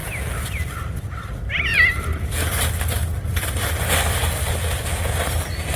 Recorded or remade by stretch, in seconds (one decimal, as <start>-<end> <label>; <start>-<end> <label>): 0.0-3.5 remade; 3.5-5.8 recorded